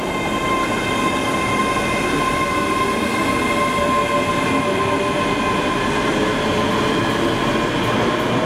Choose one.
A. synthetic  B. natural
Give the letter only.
B